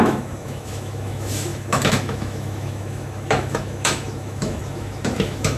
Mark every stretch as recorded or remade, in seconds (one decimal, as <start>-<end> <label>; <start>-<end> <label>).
0.0-5.6 remade